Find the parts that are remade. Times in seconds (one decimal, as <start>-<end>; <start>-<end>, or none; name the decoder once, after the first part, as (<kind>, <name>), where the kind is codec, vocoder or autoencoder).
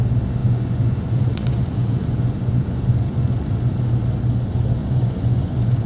0.4-3.7 (vocoder, Vocos); 4.8-5.9